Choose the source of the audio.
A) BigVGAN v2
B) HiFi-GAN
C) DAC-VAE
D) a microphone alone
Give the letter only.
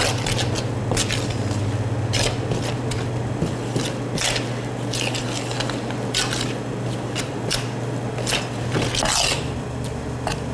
D